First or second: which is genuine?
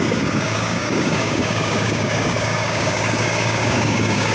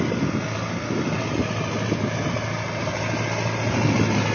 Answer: second